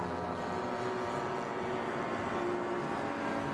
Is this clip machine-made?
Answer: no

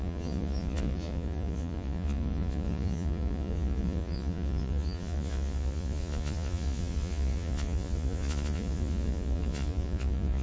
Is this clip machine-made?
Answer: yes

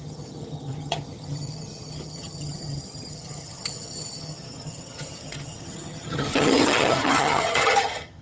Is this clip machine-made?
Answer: yes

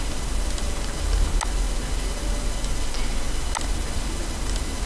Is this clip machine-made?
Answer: no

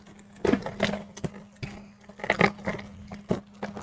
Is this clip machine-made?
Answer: no